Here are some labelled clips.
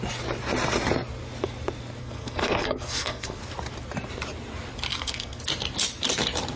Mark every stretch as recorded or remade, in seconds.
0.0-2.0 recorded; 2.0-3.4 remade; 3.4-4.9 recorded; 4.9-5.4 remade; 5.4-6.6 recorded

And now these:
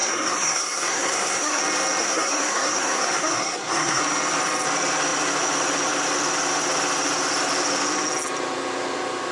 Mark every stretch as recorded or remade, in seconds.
0.0-1.6 remade; 1.6-2.0 recorded; 2.0-4.0 remade; 4.0-9.3 recorded

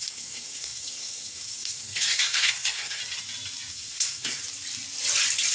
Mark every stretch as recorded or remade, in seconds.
0.0-3.0 remade; 3.0-3.7 recorded; 3.7-4.4 remade; 4.4-5.5 recorded

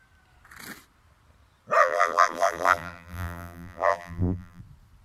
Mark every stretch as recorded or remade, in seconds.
0.0-1.8 recorded; 1.8-4.6 remade; 4.6-5.0 recorded

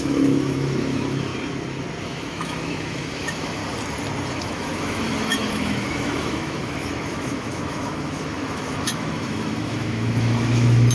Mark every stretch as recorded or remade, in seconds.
0.0-1.3 remade; 1.3-2.0 recorded; 2.0-3.6 remade; 3.6-4.4 recorded; 4.4-10.9 remade